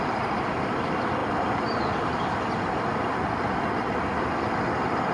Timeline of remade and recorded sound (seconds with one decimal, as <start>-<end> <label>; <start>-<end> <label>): 0.0-5.1 recorded